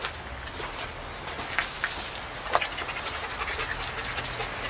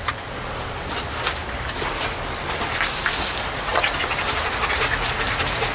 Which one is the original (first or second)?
first